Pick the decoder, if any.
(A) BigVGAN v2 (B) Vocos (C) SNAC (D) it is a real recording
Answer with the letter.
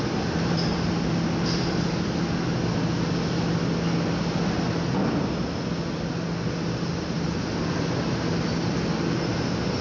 D